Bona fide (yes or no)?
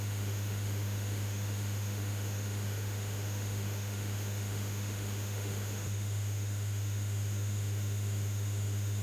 no